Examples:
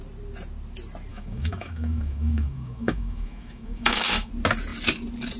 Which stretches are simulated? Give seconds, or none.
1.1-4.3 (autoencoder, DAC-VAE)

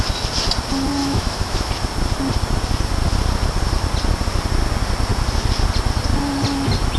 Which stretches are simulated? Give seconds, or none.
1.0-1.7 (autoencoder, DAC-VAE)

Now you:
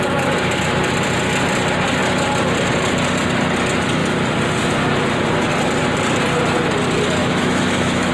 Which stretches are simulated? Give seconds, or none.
7.2-8.1 (autoencoder, DAC-VAE)

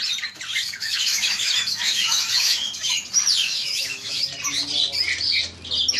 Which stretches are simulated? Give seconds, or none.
0.5-2.9 (autoencoder, DAC-VAE); 3.4-4.2

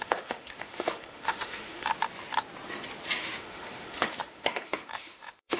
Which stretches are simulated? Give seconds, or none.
0.0-1.9 (autoencoder, DAC-VAE); 3.2-5.6

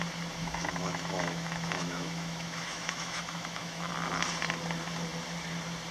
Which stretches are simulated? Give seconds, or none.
0.4-3.9 (autoencoder, DAC-VAE)

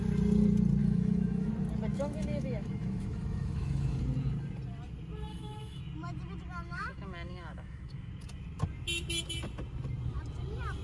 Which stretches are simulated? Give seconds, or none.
0.8-1.5 (autoencoder, DAC-VAE); 1.9-4.0; 5.3-5.8; 6.7-8.1